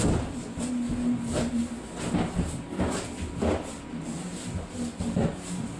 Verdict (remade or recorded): recorded